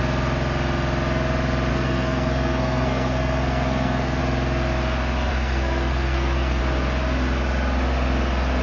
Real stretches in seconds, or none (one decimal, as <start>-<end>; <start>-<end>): 0.0-1.7; 4.2-5.3; 6.6-8.6